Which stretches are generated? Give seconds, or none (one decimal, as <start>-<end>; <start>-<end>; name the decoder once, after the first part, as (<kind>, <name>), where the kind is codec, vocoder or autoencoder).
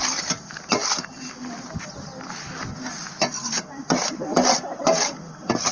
none